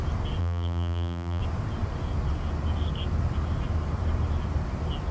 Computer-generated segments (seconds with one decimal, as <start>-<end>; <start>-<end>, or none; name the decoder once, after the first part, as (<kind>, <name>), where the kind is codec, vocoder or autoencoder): 0.4-1.4 (vocoder, BigVGAN v2)